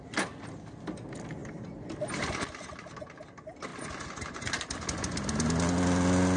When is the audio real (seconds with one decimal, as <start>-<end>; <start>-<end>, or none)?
0.0-6.4